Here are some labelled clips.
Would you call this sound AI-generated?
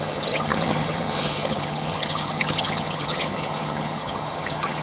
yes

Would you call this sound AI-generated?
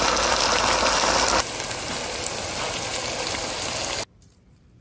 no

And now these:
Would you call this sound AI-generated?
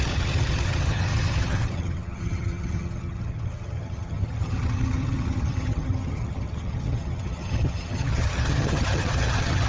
yes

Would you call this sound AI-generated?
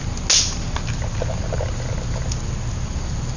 no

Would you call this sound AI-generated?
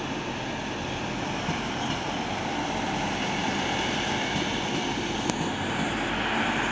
no